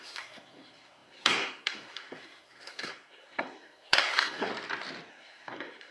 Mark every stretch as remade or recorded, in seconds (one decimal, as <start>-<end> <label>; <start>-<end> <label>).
0.0-4.5 remade; 4.5-5.1 recorded; 5.1-5.9 remade